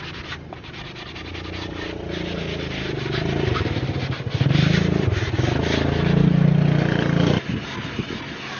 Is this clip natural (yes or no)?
yes